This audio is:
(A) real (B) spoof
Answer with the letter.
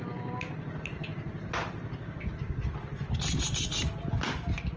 A